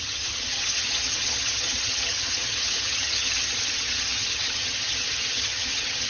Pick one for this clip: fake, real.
fake